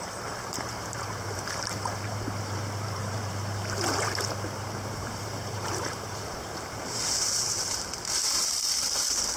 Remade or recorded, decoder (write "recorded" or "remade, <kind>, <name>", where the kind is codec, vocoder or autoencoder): remade, vocoder, BigVGAN v2